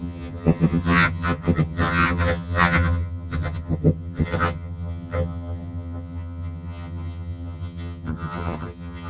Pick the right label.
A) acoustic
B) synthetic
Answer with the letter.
B